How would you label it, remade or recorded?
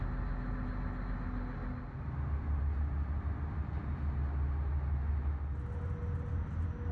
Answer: recorded